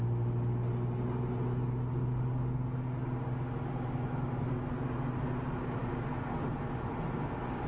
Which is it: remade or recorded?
recorded